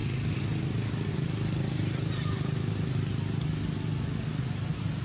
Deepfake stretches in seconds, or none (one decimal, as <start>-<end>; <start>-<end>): 0.0-1.1

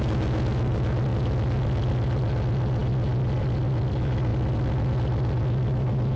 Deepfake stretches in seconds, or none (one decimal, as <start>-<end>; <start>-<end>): none

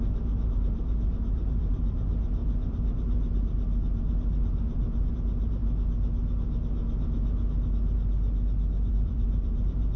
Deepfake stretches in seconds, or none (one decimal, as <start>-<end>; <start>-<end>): 0.0-5.6; 8.9-10.0

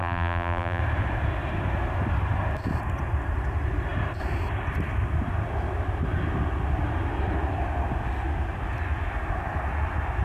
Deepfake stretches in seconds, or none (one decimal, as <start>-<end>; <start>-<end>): 0.0-0.8

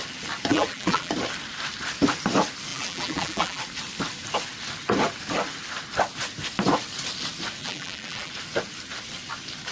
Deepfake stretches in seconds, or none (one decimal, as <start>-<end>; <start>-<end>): 0.5-1.1; 2.7-3.6; 7.6-8.3

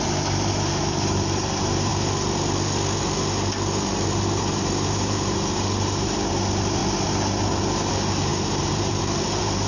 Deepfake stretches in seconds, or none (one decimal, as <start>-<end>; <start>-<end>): 0.0-1.9; 4.4-6.8; 7.9-9.7

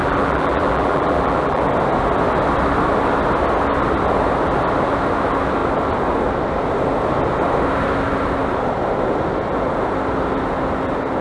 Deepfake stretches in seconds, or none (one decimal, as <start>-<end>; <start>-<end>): 0.0-1.6